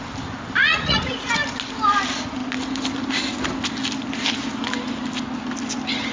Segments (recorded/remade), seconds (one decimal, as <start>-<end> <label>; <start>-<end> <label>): 0.0-0.6 recorded; 0.6-1.3 remade; 1.3-6.1 recorded